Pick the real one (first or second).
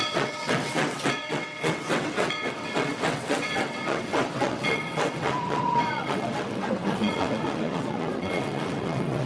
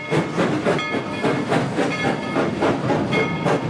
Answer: second